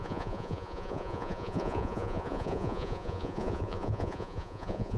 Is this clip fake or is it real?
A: fake